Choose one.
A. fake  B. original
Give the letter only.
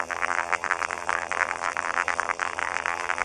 A